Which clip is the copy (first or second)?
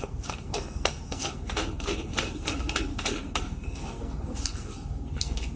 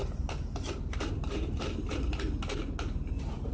first